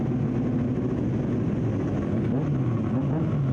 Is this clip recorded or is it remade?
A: recorded